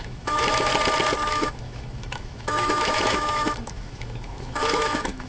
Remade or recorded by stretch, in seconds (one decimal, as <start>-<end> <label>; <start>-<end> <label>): 0.0-0.7 remade; 0.7-1.3 recorded; 1.3-5.3 remade

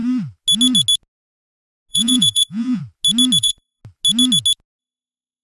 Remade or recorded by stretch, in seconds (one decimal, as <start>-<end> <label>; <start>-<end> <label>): 0.0-1.9 recorded; 1.9-2.8 remade; 2.8-3.4 recorded; 3.4-3.8 remade; 3.8-4.8 recorded; 4.8-5.4 remade

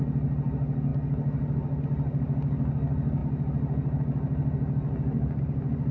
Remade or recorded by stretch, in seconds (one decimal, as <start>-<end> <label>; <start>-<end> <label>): 0.0-5.9 recorded